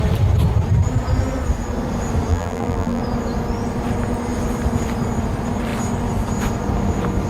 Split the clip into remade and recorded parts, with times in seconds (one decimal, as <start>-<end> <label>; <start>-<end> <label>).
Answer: 0.0-2.3 recorded; 2.3-3.0 remade; 3.0-7.3 recorded